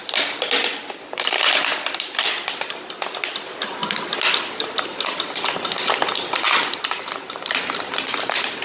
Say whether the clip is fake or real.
real